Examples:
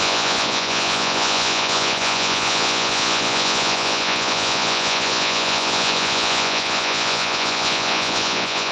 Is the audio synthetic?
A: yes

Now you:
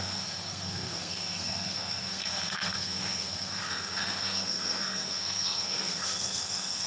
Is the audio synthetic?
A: yes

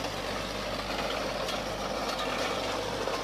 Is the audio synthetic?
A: no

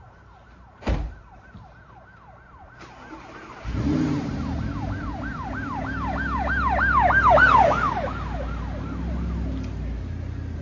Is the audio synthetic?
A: no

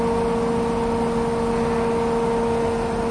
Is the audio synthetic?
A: no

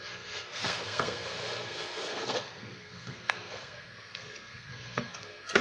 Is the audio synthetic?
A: yes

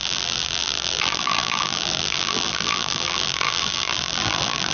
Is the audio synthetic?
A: yes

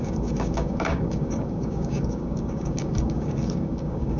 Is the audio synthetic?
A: yes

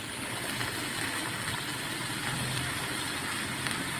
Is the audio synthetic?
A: no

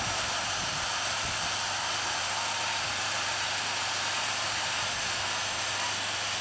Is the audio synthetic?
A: no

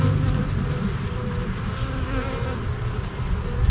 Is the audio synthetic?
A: no